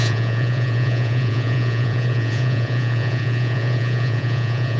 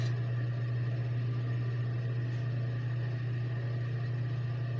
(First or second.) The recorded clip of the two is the second